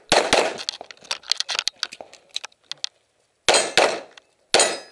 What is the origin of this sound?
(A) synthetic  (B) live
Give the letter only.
B